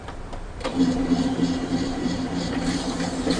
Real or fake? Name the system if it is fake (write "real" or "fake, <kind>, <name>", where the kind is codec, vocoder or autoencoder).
fake, vocoder, BigVGAN v2